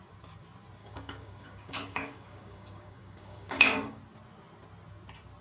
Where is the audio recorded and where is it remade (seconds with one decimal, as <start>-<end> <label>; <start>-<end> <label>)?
0.0-0.8 recorded; 0.8-4.0 remade; 4.0-5.4 recorded